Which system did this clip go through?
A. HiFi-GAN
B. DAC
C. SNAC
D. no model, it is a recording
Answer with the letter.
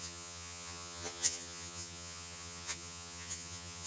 A